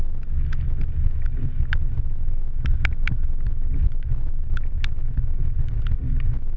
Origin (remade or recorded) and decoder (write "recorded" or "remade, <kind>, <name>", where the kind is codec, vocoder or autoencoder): recorded